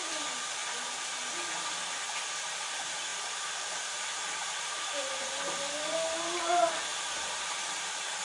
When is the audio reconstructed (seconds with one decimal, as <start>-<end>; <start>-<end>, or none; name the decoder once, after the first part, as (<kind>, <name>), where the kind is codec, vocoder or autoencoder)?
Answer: 0.0-0.6 (vocoder, BigVGAN v2); 2.4-8.2